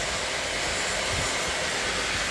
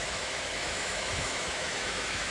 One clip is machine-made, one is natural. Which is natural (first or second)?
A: first